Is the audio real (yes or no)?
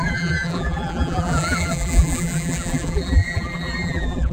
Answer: no